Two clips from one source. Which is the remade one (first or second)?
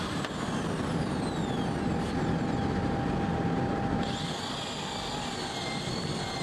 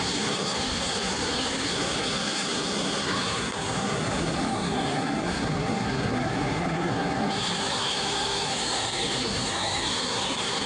second